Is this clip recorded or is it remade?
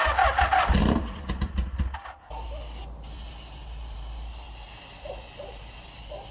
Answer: recorded